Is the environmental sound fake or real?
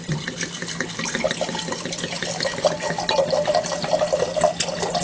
real